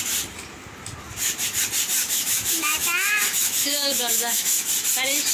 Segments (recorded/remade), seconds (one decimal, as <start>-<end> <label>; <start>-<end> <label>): 0.0-2.0 recorded; 2.0-4.7 remade; 4.7-5.3 recorded